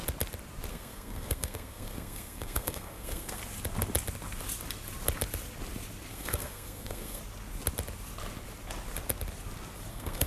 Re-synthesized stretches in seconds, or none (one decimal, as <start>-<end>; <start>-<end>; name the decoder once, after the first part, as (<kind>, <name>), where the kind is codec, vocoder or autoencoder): 0.7-3.4 (codec, SNAC); 6.1-7.2; 9.9-10.3